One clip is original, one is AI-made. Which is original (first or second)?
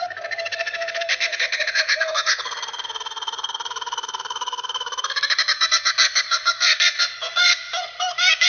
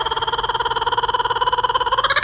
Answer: second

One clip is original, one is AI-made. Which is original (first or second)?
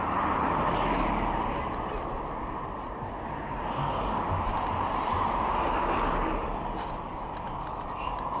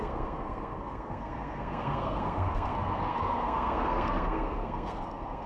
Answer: first